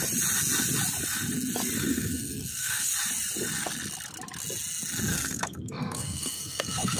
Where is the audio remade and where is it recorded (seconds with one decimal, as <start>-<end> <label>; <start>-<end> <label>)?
0.0-1.9 recorded; 1.9-2.9 remade; 2.9-5.1 recorded; 5.1-7.0 remade